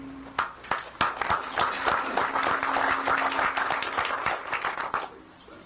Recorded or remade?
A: recorded